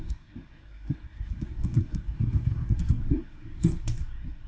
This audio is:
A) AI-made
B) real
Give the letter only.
A